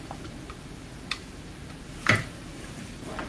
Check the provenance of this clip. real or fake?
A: fake